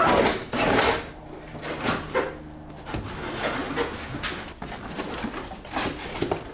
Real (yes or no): yes